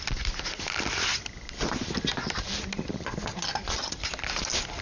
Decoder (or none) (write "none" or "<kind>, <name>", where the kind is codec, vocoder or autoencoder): none